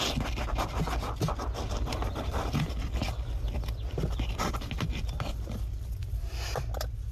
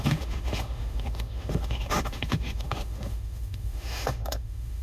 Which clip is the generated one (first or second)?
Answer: second